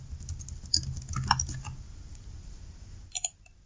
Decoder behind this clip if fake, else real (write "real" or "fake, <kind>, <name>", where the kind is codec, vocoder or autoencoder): real